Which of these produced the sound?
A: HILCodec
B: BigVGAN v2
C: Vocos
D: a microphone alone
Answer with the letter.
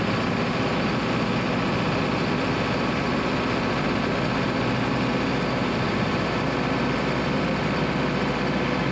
D